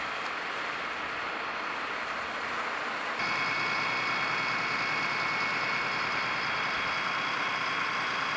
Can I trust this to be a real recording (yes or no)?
yes